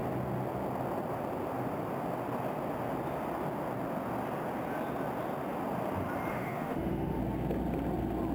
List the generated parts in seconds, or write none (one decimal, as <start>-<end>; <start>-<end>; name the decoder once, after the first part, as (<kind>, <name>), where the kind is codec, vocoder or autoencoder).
6.3-7.2 (autoencoder, DAC-VAE)